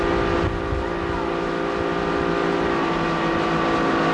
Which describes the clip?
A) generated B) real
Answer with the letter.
B